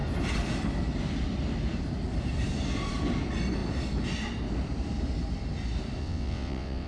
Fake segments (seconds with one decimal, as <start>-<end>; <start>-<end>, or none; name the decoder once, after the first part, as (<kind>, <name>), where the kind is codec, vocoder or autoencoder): 6.0-6.9 (vocoder, WaveNeXt)